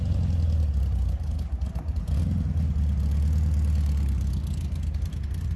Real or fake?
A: real